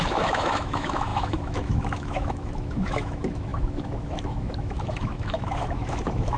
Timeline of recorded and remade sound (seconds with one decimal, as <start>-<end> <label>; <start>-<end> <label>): 0.0-6.4 remade